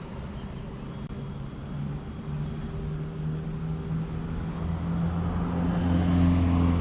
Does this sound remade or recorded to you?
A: recorded